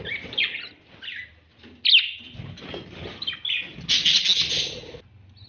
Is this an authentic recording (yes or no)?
yes